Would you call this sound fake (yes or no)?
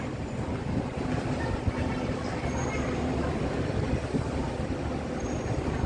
no